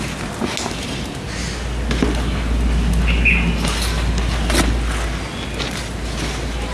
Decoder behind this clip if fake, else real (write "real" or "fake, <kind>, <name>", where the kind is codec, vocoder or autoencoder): real